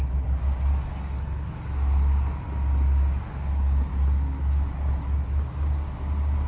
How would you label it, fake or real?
real